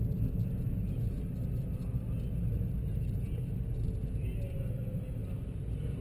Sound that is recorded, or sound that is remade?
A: recorded